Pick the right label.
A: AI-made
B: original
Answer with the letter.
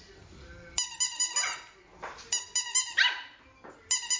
B